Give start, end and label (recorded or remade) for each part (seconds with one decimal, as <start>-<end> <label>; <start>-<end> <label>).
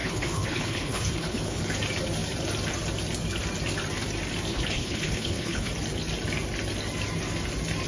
0.0-1.7 remade; 1.7-4.5 recorded; 4.5-5.7 remade; 5.7-7.9 recorded